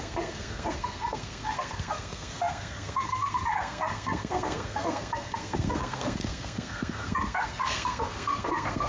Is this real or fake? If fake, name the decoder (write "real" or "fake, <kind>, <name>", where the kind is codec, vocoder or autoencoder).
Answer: fake, codec, SNAC